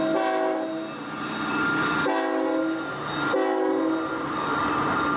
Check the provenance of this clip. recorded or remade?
recorded